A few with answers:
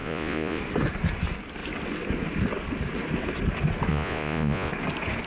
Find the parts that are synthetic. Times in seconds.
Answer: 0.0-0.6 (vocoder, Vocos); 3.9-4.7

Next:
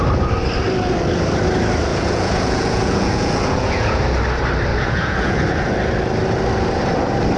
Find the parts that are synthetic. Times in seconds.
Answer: 1.9-4.0 (vocoder, Vocos); 4.7-5.7